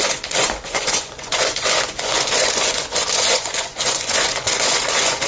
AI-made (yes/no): yes